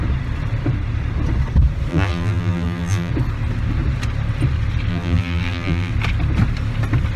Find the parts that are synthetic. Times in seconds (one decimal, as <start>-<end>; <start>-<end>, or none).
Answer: 1.9-3.1; 4.9-5.9